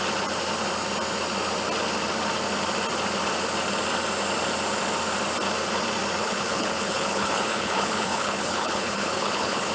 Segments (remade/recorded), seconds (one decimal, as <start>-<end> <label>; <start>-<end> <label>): 0.0-6.2 recorded; 6.2-9.7 remade